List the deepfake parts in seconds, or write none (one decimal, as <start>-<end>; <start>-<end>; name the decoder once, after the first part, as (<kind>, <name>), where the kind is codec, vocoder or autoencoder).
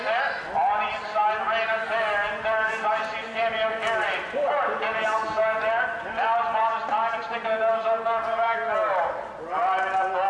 none